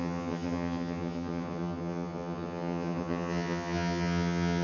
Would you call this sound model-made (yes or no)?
yes